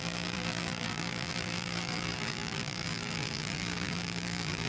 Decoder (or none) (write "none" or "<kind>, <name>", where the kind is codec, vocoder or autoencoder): vocoder, BigVGAN v2